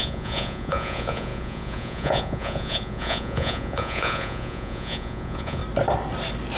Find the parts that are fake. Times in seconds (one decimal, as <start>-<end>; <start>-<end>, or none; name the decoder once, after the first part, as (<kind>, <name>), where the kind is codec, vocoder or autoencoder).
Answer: 0.0-5.6 (vocoder, Vocos)